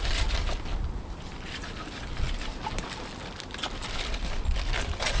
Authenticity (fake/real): real